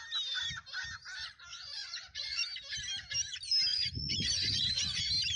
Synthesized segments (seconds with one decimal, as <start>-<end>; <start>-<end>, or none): 1.5-2.4; 3.7-5.0